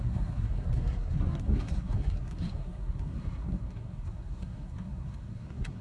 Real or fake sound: fake